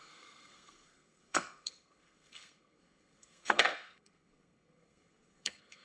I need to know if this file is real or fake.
fake